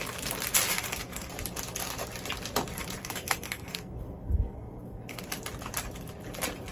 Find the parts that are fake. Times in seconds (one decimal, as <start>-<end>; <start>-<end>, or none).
0.7-1.3; 3.0-5.2